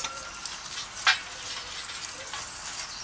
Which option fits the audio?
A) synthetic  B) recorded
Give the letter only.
B